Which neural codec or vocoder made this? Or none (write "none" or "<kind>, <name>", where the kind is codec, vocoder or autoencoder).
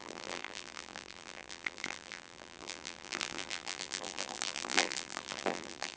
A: vocoder, BigVGAN v2